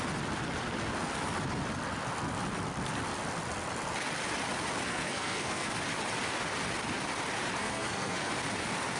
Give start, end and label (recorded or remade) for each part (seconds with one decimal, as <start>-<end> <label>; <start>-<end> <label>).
0.0-4.9 recorded; 4.9-5.7 remade; 5.7-7.6 recorded; 7.6-8.3 remade; 8.3-9.0 recorded